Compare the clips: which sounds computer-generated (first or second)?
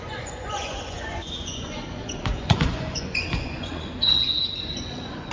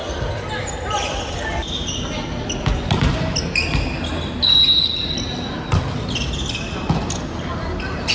first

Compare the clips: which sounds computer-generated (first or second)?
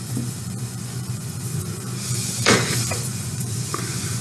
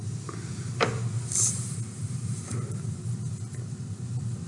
first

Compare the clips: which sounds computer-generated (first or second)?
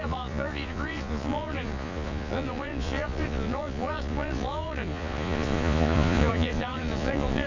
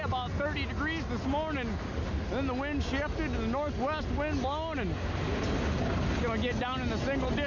first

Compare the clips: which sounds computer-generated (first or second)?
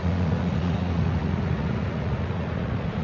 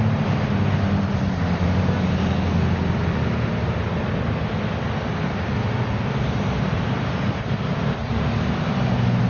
first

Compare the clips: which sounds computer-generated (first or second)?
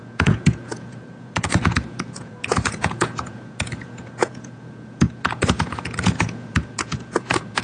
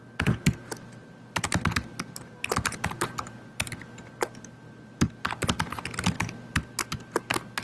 first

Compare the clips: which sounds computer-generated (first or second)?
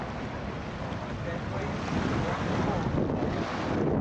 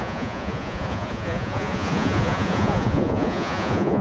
second